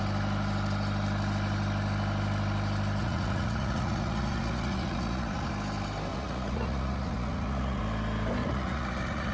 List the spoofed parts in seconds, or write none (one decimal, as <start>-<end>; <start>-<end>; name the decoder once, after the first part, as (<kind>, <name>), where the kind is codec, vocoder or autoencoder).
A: 3.0-5.5 (vocoder, Vocos); 6.1-7.8; 8.4-9.3